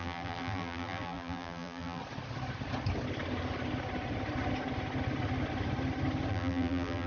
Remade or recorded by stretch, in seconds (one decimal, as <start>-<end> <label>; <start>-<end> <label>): 0.0-2.0 remade; 2.0-6.3 recorded; 6.3-7.1 remade